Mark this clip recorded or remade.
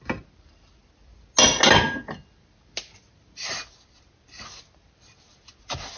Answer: recorded